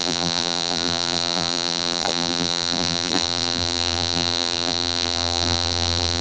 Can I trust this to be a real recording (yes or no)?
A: no